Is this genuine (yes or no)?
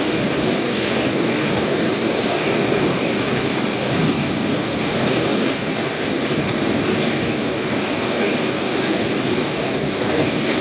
no